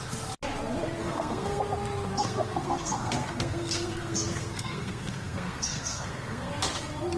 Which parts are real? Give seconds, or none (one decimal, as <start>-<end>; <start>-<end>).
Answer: 0.0-1.0; 1.6-2.2; 6.5-7.2